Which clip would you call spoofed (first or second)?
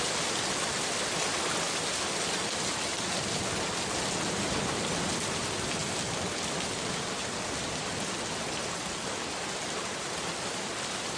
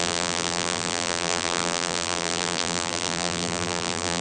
second